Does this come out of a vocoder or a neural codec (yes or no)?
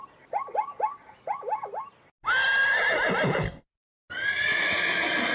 no